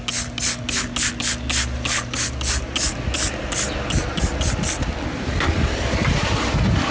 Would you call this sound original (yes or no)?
yes